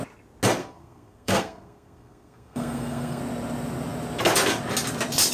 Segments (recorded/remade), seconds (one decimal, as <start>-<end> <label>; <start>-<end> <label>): 0.0-0.6 recorded; 0.6-3.2 remade; 3.2-5.3 recorded